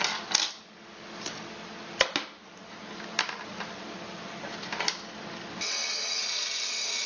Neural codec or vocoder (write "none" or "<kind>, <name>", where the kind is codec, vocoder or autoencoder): none